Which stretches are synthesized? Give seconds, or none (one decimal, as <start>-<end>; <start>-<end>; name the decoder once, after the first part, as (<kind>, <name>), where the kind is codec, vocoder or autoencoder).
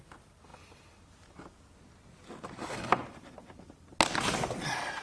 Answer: none